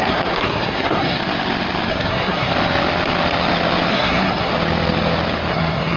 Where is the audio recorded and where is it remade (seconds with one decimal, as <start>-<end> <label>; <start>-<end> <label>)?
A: 0.0-1.2 remade; 1.2-1.9 recorded; 1.9-2.5 remade; 2.5-3.9 recorded; 3.9-4.5 remade; 4.5-5.5 recorded; 5.5-6.0 remade